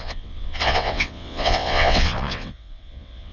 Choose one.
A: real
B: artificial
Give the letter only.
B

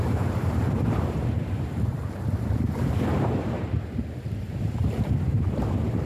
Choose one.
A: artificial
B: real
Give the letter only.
A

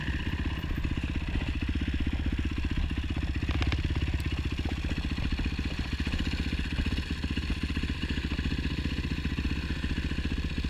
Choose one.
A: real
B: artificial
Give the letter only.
A